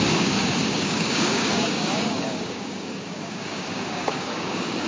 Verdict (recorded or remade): remade